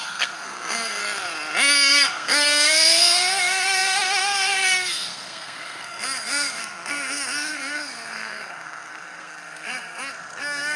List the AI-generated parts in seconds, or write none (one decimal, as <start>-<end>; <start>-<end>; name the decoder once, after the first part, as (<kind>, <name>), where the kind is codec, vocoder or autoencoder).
0.0-1.0 (codec, SNAC); 1.9-10.8